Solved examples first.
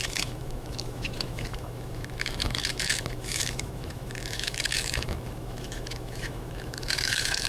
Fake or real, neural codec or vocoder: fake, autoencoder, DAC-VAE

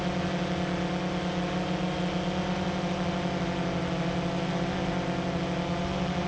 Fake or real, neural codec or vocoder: real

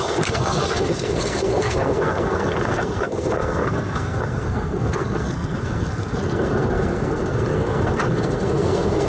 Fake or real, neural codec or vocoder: fake, codec, SNAC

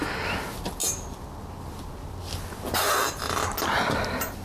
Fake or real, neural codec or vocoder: real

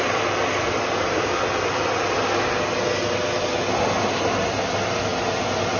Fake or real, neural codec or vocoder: real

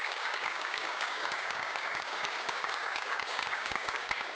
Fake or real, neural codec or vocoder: fake, codec, DAC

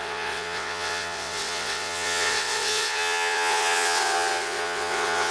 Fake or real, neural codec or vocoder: fake, vocoder, WaveNeXt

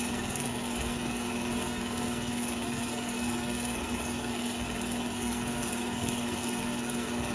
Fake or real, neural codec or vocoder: fake, codec, SNAC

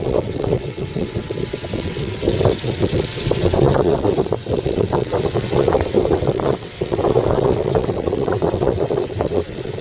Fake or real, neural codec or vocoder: fake, vocoder, WaveNeXt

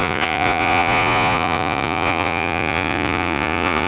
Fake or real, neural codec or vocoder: fake, vocoder, Vocos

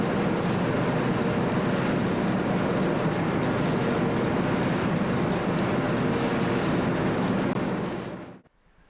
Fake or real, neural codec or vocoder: real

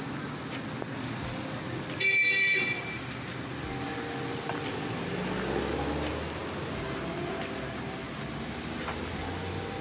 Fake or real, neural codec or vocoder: real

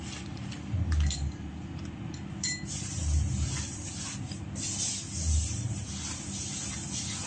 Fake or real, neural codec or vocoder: real